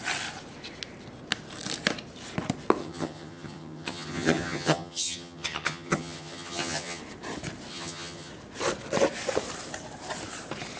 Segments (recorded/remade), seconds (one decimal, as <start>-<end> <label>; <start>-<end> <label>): 0.0-2.8 recorded; 2.8-7.0 remade; 7.0-7.7 recorded; 7.7-8.3 remade; 8.3-10.8 recorded